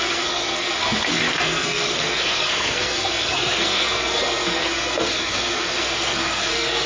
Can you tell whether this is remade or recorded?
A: remade